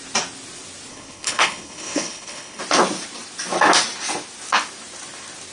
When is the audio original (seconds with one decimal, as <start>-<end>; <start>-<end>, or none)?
0.0-0.9; 2.6-5.5